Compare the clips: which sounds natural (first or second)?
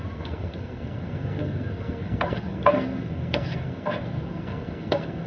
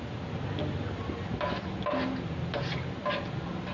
second